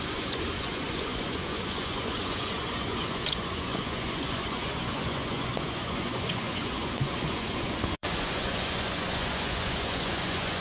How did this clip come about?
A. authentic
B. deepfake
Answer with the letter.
B